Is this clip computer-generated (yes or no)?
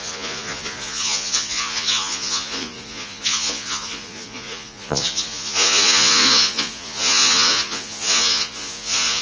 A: yes